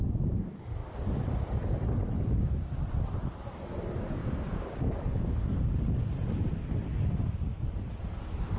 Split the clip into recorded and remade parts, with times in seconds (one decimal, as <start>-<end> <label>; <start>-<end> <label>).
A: 0.0-0.8 recorded; 0.8-2.9 remade; 2.9-4.2 recorded; 4.2-5.6 remade; 5.6-8.6 recorded